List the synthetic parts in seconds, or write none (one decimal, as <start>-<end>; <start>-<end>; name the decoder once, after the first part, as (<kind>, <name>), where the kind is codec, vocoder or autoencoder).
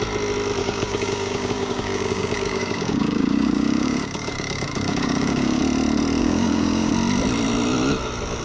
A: 0.6-5.6 (codec, DAC); 6.2-6.9